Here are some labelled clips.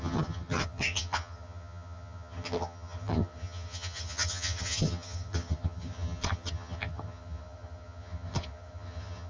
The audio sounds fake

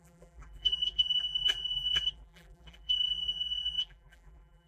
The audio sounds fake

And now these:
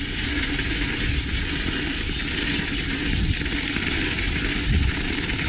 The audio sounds real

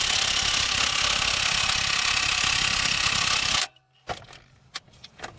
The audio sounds real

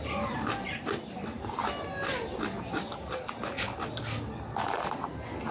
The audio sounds real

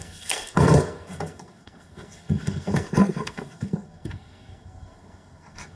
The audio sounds fake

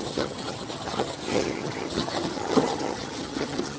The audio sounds fake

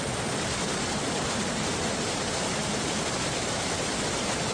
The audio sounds real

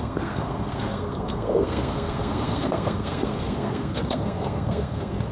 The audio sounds fake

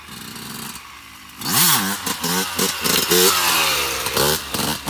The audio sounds real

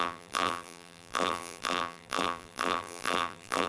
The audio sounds fake